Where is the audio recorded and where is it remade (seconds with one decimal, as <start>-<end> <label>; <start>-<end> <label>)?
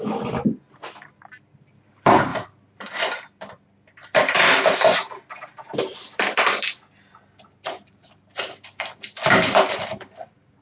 0.0-10.6 recorded